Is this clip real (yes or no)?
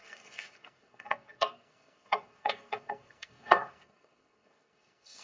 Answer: no